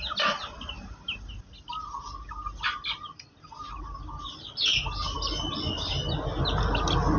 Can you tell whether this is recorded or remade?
recorded